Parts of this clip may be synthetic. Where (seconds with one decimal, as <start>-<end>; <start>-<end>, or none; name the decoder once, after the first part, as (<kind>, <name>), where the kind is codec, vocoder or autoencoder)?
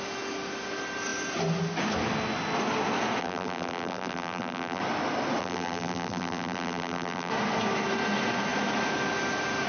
3.2-4.8 (vocoder, BigVGAN v2); 5.4-7.3